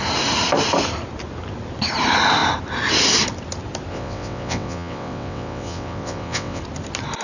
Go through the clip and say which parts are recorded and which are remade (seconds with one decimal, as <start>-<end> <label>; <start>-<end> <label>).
0.0-3.9 recorded; 3.9-6.6 remade; 6.6-7.2 recorded